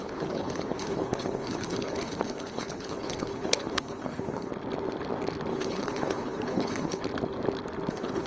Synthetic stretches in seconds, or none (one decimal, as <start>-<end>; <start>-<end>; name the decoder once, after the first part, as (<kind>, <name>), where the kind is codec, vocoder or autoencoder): 0.0-4.5 (codec, HILCodec); 5.5-7.0; 7.9-8.3